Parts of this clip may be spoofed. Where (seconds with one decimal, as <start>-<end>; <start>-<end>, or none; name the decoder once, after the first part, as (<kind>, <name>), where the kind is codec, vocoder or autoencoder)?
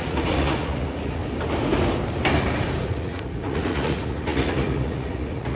0.0-1.2 (vocoder, Vocos); 2.8-5.6